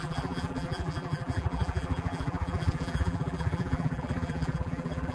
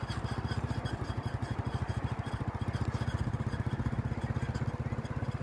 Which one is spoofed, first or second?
first